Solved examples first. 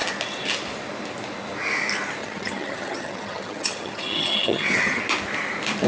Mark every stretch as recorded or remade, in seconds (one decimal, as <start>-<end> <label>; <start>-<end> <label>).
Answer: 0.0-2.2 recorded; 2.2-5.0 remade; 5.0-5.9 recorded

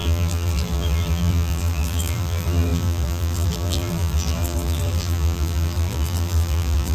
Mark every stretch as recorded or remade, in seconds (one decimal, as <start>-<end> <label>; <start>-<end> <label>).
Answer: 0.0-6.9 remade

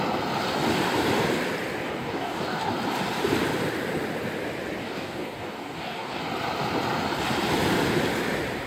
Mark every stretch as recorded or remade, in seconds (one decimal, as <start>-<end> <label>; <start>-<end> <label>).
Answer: 0.0-2.0 recorded; 2.0-2.7 remade; 2.7-4.8 recorded; 4.8-6.2 remade; 6.2-8.7 recorded

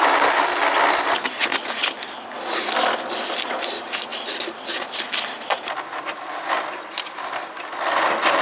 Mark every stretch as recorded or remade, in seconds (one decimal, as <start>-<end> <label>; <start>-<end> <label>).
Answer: 0.0-8.4 recorded

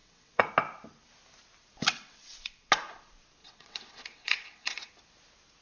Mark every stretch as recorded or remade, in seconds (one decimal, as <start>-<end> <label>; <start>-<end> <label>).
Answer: 0.0-0.5 remade; 0.5-1.9 recorded; 1.9-2.7 remade; 2.7-3.4 recorded; 3.4-4.9 remade; 4.9-5.6 recorded

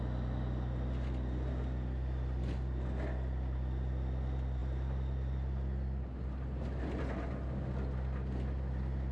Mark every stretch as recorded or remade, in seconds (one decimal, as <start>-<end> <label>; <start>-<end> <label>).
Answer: 0.0-9.1 recorded

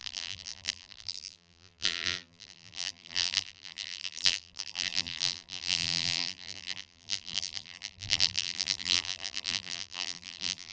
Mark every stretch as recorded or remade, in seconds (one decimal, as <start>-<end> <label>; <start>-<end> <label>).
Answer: 0.0-10.7 remade

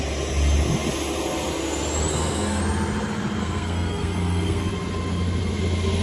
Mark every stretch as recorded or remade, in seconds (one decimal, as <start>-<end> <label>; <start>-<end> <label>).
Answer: 0.0-2.1 recorded; 2.1-2.6 remade; 2.6-3.4 recorded; 3.4-4.7 remade; 4.7-6.0 recorded